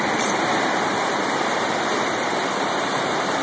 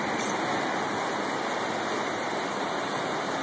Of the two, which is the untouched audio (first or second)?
second